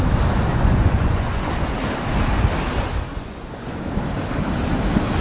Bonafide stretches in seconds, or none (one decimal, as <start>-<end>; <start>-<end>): 0.0-0.5; 1.5-3.1; 3.8-5.2